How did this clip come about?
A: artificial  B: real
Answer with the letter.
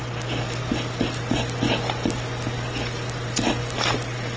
B